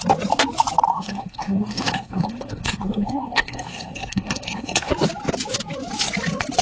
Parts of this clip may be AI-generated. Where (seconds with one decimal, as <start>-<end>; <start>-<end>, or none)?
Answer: 0.9-4.9